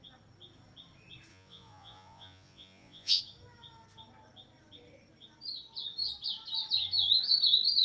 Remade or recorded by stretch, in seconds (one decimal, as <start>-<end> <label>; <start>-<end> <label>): 0.0-1.3 recorded; 1.3-3.2 remade; 3.2-7.8 recorded